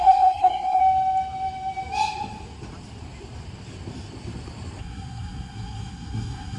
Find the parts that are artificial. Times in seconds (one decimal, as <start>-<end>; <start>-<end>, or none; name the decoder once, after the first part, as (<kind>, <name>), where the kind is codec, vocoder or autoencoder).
0.0-0.8 (codec, SNAC); 4.8-6.6